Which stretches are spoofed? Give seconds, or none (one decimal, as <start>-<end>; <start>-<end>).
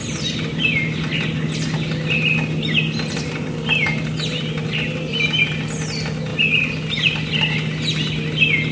none